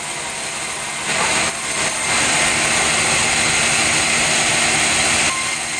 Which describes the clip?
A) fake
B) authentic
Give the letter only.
B